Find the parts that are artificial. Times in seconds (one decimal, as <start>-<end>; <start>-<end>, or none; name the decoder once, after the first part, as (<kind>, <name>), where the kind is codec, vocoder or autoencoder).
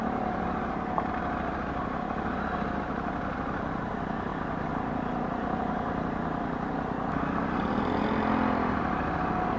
none